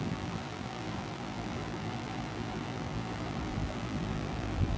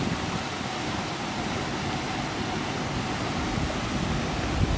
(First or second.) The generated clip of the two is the first